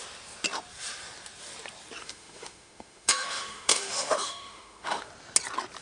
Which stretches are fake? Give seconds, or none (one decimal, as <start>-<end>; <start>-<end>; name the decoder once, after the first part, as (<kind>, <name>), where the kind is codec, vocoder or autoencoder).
2.0-5.1 (autoencoder, DAC-VAE)